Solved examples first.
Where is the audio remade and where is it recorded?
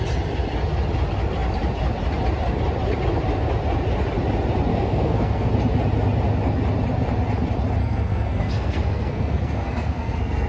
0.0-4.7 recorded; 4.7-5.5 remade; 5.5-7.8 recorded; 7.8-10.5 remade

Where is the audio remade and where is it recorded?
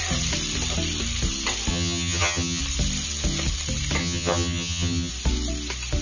0.0-1.7 recorded; 1.7-2.6 remade; 2.6-4.0 recorded; 4.0-5.1 remade; 5.1-6.0 recorded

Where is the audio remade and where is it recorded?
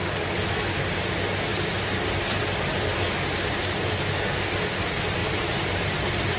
0.0-1.5 recorded; 1.5-3.9 remade; 3.9-5.2 recorded; 5.2-6.4 remade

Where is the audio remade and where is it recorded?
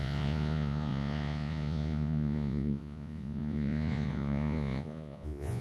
0.0-5.6 remade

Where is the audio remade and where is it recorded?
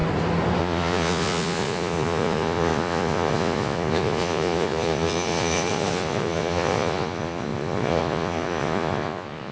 0.0-0.6 recorded; 0.6-9.5 remade